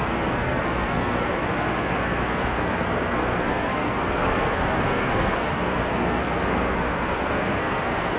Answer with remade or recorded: remade